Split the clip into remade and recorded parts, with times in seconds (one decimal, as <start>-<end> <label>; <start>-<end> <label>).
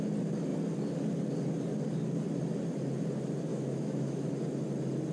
0.0-3.5 recorded; 3.5-4.3 remade; 4.3-5.1 recorded